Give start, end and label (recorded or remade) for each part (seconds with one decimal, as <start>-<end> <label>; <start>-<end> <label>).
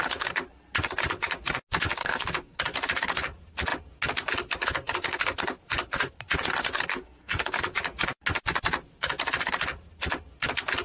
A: 0.0-2.0 recorded; 2.0-2.6 remade; 2.6-6.9 recorded; 6.9-7.6 remade; 7.6-10.8 recorded